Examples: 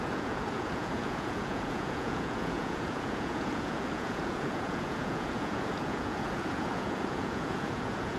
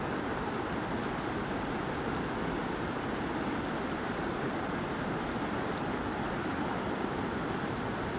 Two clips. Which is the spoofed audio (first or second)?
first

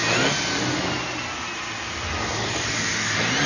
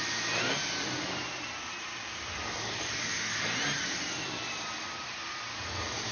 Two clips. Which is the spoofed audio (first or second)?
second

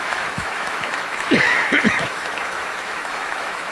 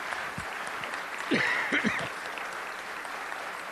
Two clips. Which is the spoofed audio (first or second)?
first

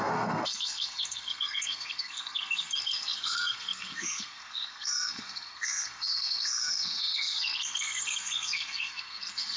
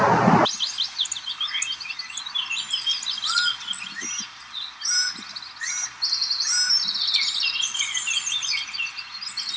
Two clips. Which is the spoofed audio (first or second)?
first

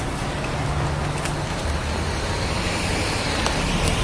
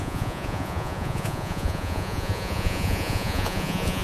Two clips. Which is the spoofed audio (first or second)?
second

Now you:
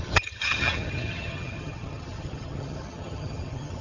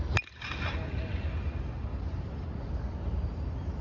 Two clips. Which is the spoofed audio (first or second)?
first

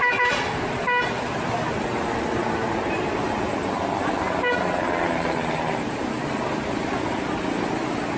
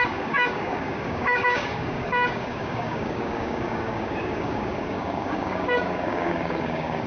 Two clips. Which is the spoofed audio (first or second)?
second